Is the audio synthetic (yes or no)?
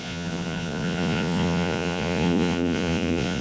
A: yes